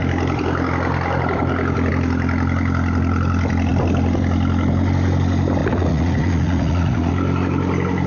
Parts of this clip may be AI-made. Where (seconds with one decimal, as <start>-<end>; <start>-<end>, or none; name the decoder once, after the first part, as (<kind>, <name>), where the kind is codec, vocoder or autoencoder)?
5.6-7.1 (vocoder, Vocos)